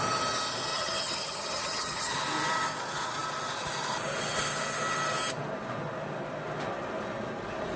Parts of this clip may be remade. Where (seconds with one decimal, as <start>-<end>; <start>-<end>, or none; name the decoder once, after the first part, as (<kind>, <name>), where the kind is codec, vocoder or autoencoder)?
0.7-2.1 (vocoder, HiFi-GAN)